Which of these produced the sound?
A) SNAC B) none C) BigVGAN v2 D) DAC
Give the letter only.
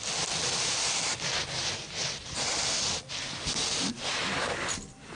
B